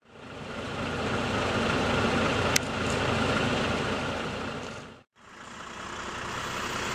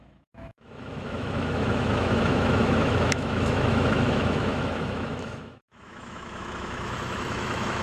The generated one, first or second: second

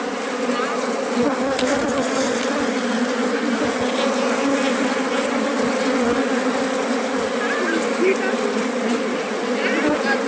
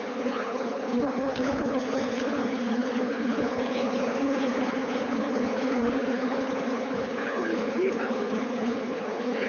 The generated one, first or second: second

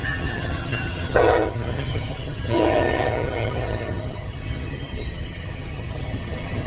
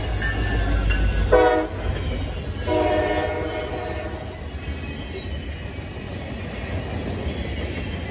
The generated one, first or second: first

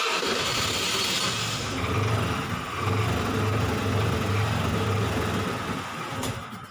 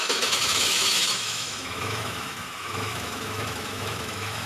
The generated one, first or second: second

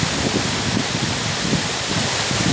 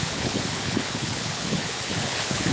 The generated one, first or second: second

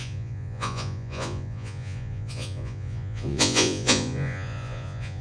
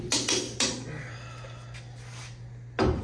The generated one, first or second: first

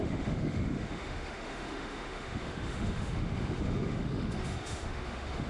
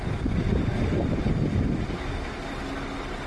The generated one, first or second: first